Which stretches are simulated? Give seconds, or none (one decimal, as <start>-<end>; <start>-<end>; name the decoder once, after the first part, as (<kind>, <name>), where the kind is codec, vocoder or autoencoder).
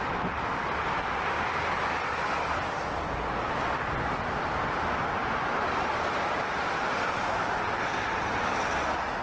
5.2-7.6 (vocoder, BigVGAN v2)